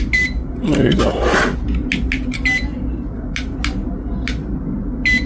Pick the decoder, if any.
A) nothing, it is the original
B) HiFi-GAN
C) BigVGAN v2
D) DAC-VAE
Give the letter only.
A